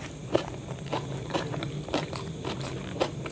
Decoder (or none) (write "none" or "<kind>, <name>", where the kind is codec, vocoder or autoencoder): vocoder, BigVGAN v2